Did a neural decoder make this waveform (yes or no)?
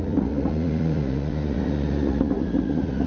yes